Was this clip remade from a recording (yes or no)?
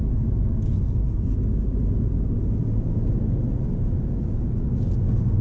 no